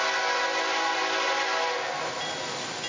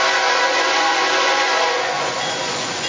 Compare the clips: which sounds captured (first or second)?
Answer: first